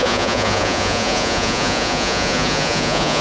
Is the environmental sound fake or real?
fake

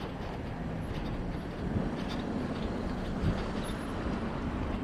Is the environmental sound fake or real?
real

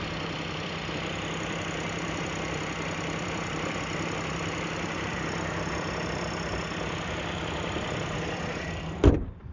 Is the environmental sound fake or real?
fake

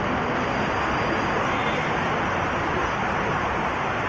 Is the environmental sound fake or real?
real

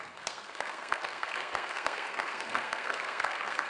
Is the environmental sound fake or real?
fake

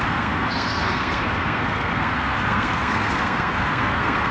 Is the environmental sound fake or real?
fake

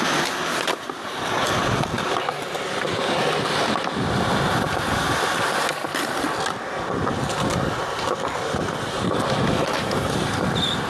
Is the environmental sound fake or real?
real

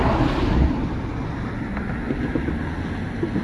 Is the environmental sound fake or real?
real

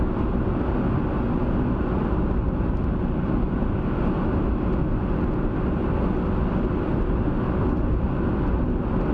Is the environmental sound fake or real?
real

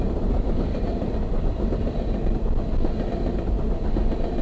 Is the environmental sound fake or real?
real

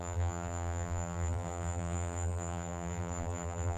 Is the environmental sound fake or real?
fake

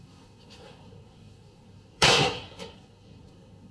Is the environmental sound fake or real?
fake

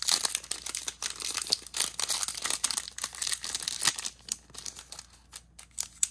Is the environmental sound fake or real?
real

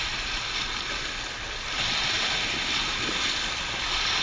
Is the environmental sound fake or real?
real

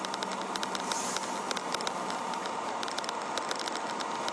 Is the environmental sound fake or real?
real